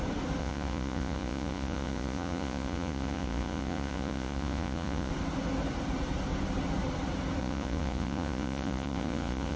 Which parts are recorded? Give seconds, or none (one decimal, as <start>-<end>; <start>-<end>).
0.0-0.4; 5.1-7.4